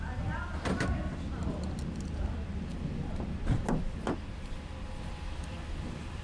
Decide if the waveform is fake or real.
real